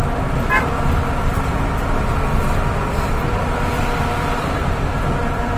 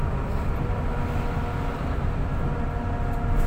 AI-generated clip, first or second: first